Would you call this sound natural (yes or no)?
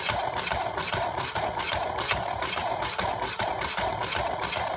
yes